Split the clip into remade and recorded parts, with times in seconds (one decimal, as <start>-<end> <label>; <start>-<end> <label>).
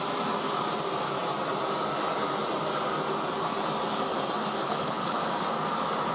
0.0-4.6 recorded; 4.6-5.2 remade; 5.2-6.1 recorded